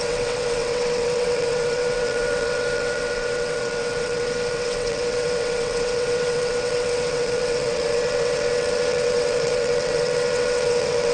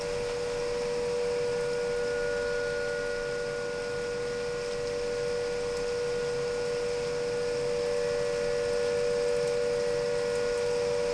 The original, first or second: second